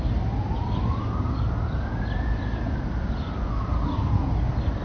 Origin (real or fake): real